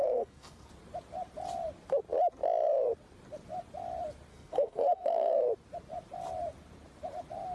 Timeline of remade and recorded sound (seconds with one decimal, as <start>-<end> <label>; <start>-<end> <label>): 0.0-0.7 remade; 0.7-4.3 recorded; 4.3-5.4 remade; 5.4-7.5 recorded